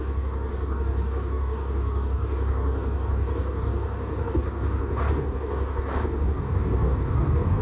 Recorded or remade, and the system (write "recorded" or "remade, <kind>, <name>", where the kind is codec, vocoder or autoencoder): remade, codec, DAC